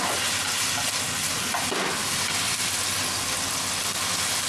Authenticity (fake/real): real